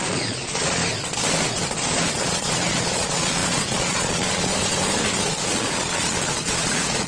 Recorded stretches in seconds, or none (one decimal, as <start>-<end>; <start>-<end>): 0.8-2.1; 4.5-5.3

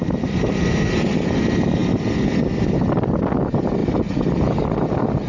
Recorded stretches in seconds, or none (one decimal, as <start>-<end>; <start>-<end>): 1.1-5.3